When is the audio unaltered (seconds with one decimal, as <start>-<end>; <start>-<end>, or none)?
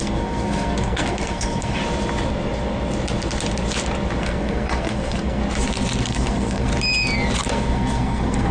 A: 1.8-4.2; 5.4-6.0; 6.7-7.5